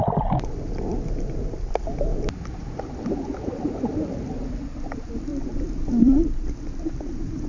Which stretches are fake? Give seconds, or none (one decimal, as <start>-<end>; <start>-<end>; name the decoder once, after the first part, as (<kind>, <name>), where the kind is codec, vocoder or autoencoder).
2.1-2.8 (vocoder, BigVGAN v2); 5.3-6.5